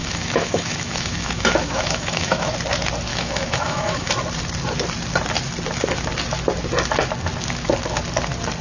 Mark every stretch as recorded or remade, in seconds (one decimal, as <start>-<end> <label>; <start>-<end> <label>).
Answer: 0.0-2.5 remade; 2.5-3.1 recorded; 3.1-4.1 remade; 4.1-8.6 recorded